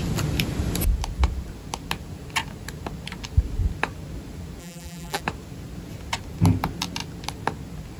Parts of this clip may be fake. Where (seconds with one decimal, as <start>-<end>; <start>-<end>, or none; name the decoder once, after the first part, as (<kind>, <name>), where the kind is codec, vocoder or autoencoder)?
4.6-5.2 (vocoder, BigVGAN v2)